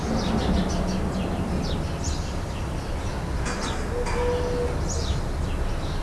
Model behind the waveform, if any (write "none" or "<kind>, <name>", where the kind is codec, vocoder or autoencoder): none